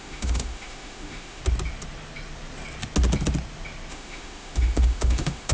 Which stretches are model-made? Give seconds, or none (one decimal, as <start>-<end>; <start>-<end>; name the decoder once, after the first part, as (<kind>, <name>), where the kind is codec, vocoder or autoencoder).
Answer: 0.0-1.4 (autoencoder, DAC-VAE); 3.9-5.5